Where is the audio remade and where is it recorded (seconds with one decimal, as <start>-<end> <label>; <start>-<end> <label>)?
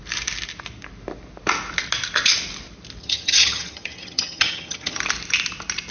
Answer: 0.0-3.0 recorded; 3.0-5.0 remade; 5.0-5.9 recorded